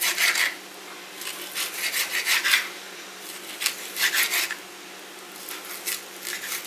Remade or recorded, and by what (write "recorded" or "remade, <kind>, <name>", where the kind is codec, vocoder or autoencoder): recorded